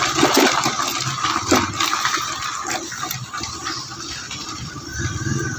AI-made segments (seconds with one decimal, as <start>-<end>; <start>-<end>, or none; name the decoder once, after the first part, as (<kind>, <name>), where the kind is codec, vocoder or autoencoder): 0.0-4.9 (vocoder, BigVGAN v2)